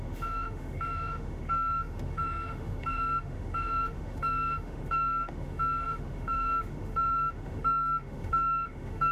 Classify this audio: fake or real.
fake